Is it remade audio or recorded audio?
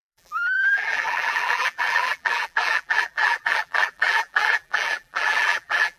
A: remade